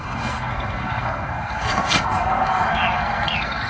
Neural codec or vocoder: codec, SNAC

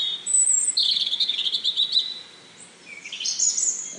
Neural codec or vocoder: none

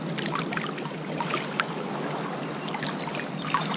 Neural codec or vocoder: none